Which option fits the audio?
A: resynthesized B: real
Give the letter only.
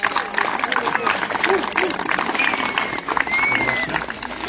B